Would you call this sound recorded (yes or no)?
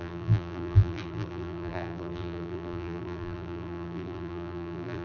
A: no